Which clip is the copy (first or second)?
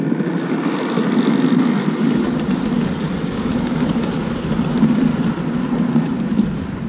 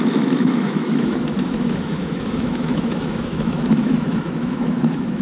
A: second